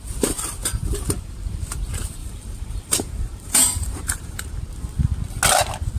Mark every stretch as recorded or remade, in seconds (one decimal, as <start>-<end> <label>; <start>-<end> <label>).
0.0-2.2 recorded; 2.2-4.6 remade; 4.6-6.0 recorded